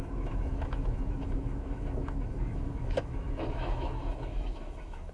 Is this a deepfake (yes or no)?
yes